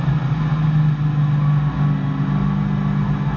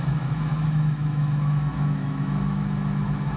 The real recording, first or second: first